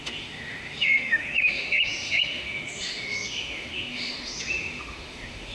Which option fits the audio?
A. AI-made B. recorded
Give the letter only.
A